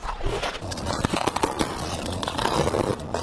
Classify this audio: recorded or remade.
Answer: remade